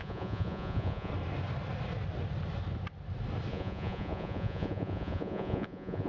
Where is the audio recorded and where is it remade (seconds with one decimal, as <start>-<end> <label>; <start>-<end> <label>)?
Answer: 0.0-1.1 remade; 1.1-3.5 recorded; 3.5-6.1 remade